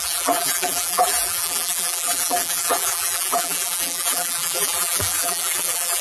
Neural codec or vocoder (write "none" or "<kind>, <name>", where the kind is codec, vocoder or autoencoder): vocoder, BigVGAN v2